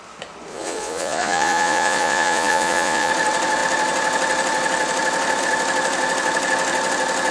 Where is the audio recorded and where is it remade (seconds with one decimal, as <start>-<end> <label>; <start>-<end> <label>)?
0.0-0.5 recorded; 0.5-3.1 remade; 3.1-7.3 recorded